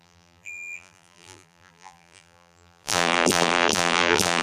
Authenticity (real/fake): fake